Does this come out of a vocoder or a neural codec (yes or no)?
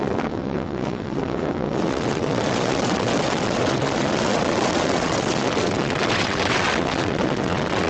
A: yes